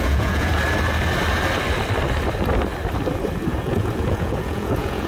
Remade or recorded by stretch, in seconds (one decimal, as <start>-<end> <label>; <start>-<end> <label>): 0.0-0.5 remade; 0.5-3.6 recorded; 3.6-5.1 remade